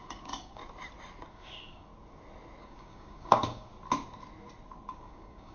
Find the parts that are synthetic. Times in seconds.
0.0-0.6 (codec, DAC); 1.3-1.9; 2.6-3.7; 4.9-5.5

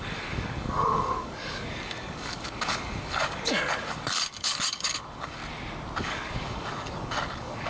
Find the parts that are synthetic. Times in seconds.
0.0-5.4 (codec, DAC); 6.0-7.7

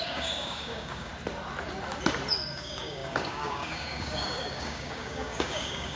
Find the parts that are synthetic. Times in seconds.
0.0-1.1 (codec, DAC); 2.5-6.0

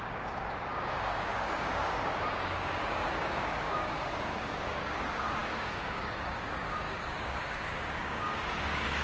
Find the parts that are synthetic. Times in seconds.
0.0-9.0 (codec, DAC)